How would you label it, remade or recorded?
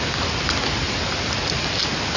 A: recorded